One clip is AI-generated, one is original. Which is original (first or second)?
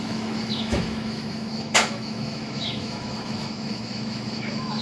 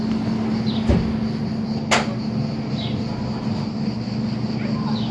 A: second